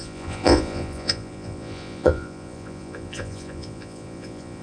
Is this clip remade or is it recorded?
remade